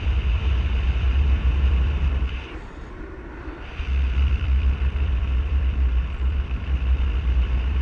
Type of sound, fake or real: fake